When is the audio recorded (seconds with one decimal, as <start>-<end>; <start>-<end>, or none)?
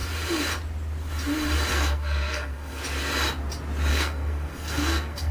0.0-1.7; 2.8-3.9